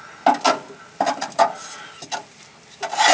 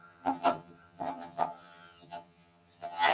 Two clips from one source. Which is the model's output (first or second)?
second